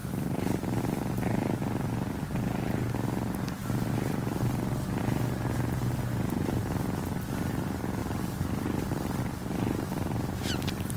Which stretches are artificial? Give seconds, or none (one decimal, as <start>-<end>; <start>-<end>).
3.6-5.0; 8.0-9.2